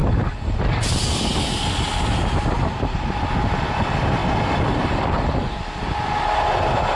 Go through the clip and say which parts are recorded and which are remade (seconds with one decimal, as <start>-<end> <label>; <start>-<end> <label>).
0.0-7.0 recorded